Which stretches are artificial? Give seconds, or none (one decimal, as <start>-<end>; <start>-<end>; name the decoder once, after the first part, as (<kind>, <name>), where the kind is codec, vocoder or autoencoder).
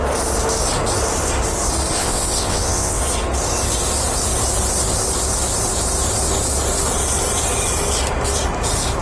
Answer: 2.0-3.0 (vocoder, WaveNeXt)